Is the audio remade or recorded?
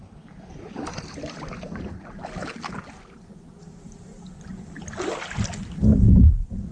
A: recorded